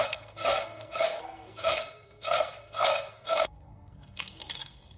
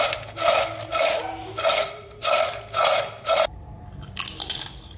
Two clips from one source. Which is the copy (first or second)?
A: first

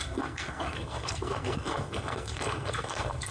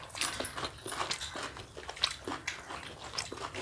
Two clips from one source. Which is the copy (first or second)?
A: first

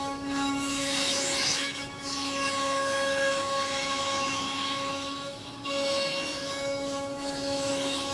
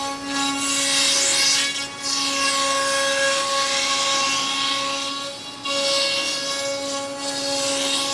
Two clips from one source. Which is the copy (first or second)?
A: first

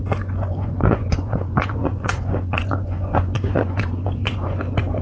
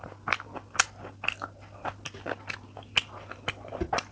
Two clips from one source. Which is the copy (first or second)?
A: first